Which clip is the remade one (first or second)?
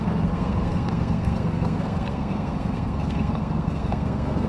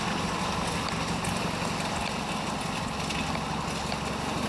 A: first